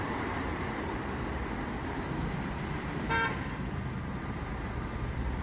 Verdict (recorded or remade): remade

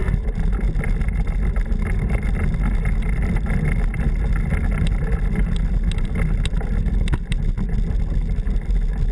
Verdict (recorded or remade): recorded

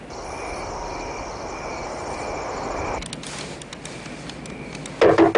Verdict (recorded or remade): recorded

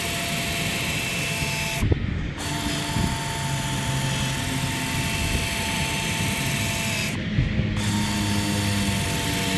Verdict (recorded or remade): recorded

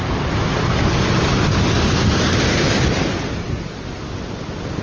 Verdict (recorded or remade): recorded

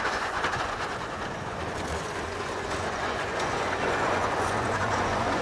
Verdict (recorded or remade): remade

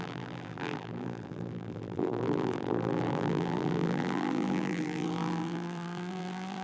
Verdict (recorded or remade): remade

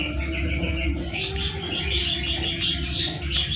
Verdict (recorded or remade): recorded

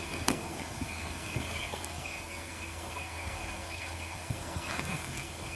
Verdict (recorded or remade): remade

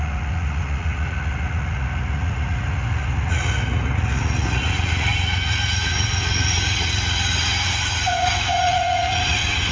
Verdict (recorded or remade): remade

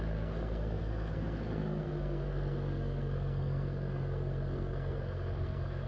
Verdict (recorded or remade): remade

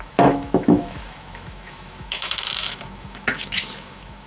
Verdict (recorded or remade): remade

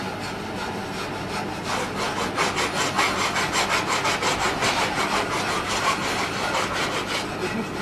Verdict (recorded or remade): recorded